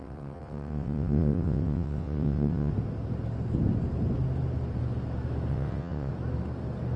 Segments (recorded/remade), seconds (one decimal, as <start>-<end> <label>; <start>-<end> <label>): 0.0-2.7 remade; 2.7-5.5 recorded; 5.5-6.1 remade; 6.1-7.0 recorded